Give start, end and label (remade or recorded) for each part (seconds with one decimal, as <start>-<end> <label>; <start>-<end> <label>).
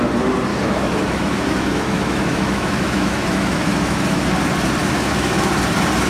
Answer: 0.0-0.5 recorded; 0.5-4.2 remade; 4.2-4.8 recorded; 4.8-5.5 remade; 5.5-6.1 recorded